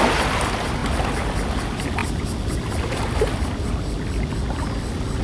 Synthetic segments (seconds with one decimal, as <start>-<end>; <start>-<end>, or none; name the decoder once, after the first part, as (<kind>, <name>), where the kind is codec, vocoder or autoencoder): none